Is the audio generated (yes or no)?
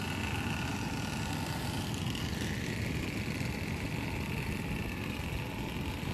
no